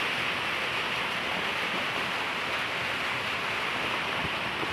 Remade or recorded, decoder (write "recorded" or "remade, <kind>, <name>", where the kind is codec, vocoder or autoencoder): recorded